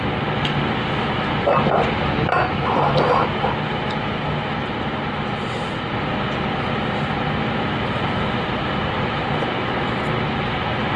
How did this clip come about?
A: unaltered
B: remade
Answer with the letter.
A